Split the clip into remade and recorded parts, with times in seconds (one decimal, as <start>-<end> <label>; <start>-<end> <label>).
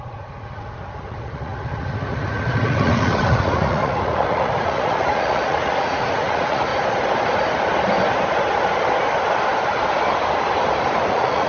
0.0-6.7 remade; 6.7-11.1 recorded; 11.1-11.5 remade